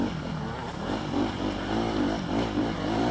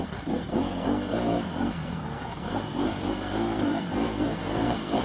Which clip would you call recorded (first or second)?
first